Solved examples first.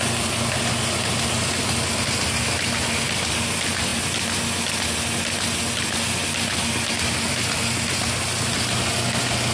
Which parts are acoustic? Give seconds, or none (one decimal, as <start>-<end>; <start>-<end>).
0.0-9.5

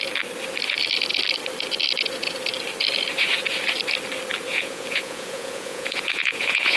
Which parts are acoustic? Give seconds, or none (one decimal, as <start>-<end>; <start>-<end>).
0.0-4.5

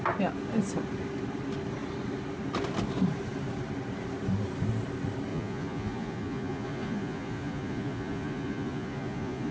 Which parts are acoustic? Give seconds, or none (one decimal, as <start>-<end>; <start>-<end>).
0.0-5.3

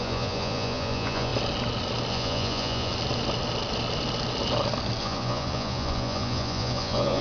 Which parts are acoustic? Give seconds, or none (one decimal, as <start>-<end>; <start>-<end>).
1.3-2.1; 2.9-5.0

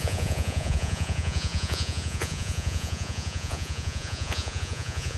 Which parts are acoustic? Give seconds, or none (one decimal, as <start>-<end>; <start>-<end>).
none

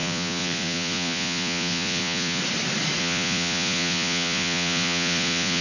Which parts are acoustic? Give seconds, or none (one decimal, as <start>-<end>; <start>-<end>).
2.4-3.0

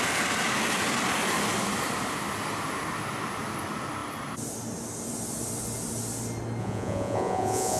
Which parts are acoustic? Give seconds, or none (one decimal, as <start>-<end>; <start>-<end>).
0.0-6.6